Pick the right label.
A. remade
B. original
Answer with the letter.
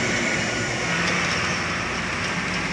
B